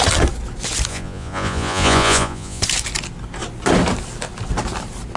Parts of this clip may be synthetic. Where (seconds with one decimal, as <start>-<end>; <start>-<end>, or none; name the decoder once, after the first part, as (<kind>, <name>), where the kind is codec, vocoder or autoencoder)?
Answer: 0.9-2.6 (vocoder, Vocos)